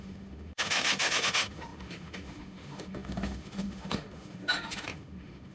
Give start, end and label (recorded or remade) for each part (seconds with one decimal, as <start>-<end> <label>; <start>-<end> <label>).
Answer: 0.0-5.5 remade